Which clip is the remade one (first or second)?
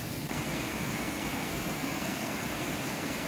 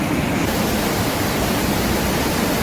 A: first